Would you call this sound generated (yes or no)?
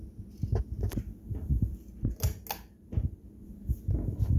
no